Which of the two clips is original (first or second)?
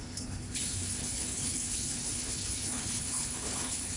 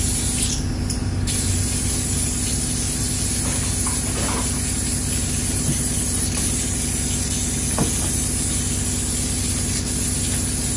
second